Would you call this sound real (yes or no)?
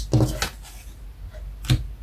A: yes